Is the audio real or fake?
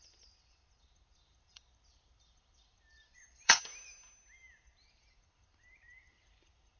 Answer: fake